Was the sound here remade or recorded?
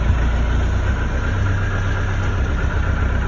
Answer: recorded